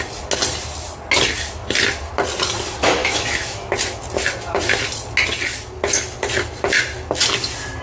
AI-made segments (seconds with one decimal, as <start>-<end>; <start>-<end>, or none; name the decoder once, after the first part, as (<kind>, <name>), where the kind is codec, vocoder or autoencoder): 3.0-3.7 (autoencoder, DAC-VAE)